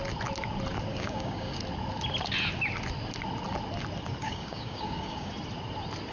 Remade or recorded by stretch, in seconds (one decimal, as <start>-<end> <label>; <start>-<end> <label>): 0.0-0.9 recorded; 0.9-1.6 remade; 1.6-4.2 recorded; 4.2-5.3 remade; 5.3-6.1 recorded